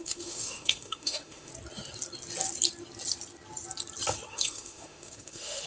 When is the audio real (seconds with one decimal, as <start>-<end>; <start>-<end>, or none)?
1.5-4.3